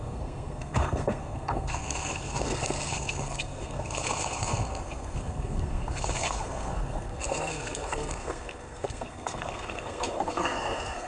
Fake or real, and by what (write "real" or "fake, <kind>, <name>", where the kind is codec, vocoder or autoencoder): fake, codec, SNAC